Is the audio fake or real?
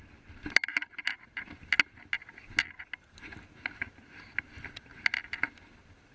real